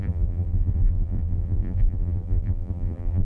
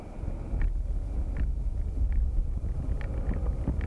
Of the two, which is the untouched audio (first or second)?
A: second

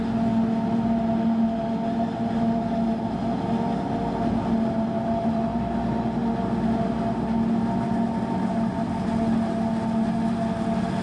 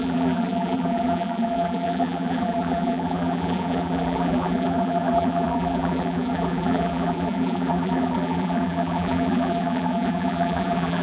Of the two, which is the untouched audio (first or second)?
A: first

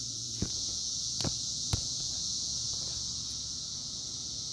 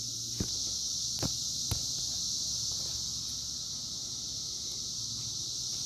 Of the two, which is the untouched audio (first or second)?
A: second